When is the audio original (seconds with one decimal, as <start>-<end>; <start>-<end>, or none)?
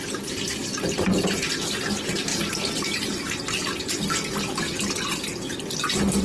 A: 0.0-0.6; 1.5-2.3